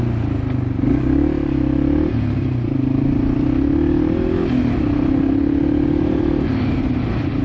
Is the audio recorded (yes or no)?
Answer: yes